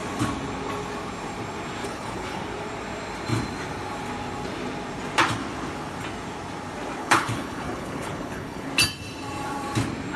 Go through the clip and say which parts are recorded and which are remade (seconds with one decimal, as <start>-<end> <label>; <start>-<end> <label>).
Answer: 0.0-1.8 recorded; 1.8-2.4 remade; 2.4-7.0 recorded; 7.0-8.7 remade; 8.7-10.2 recorded